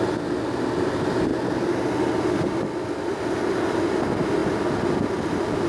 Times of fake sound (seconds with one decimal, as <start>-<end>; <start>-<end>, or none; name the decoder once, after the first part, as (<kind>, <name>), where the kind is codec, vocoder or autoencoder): none